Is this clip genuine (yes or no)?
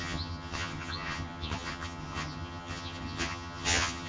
no